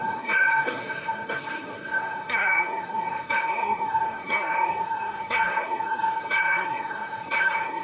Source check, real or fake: fake